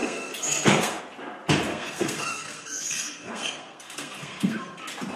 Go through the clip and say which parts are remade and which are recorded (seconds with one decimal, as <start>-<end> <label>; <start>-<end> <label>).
0.0-1.0 remade; 1.0-1.7 recorded; 1.7-4.8 remade; 4.8-5.2 recorded